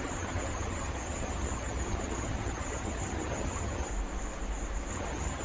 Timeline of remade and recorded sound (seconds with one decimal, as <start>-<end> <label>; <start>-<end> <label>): 0.0-3.9 remade; 3.9-4.9 recorded; 4.9-5.4 remade